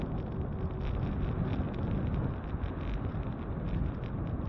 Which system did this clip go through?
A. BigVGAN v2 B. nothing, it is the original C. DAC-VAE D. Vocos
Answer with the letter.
B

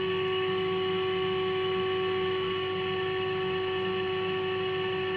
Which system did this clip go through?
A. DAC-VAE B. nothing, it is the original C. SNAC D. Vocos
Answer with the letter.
B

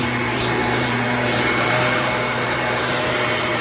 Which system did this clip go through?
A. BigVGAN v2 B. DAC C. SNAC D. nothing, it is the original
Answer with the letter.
A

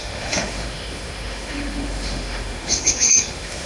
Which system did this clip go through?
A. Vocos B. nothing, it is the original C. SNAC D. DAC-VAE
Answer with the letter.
D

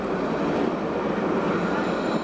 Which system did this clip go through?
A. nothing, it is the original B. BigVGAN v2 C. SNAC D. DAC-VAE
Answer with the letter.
A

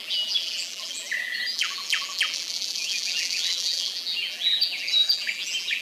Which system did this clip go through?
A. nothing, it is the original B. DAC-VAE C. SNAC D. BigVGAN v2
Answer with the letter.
D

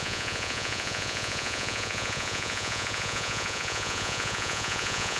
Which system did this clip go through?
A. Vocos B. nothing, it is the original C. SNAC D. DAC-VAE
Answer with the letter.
A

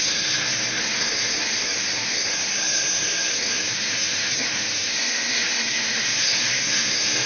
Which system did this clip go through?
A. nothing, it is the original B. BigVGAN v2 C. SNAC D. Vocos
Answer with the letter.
C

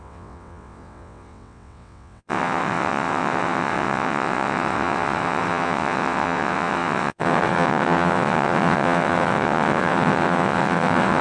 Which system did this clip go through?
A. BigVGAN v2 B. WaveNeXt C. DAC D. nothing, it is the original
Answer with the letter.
B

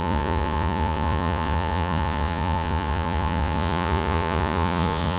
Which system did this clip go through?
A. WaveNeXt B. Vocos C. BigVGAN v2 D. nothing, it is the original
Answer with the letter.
B